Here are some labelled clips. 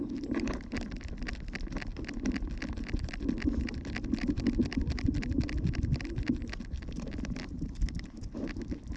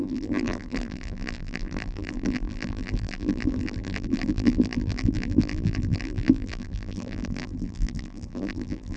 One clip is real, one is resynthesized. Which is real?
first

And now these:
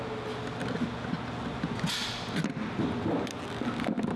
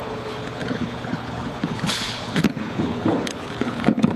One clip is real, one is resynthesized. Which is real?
first